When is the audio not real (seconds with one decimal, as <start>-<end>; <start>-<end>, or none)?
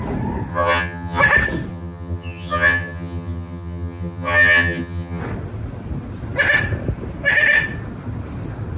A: 0.5-1.2; 1.7-5.2